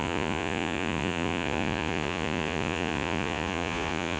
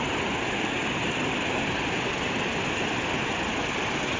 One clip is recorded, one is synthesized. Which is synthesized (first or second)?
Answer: first